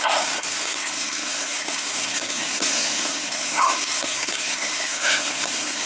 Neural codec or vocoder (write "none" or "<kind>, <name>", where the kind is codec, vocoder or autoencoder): codec, SNAC